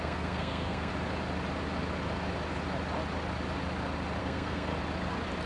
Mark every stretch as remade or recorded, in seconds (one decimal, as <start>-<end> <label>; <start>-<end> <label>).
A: 0.0-0.9 remade; 0.9-4.2 recorded; 4.2-4.7 remade; 4.7-5.5 recorded